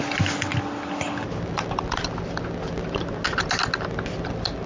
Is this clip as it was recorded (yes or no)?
yes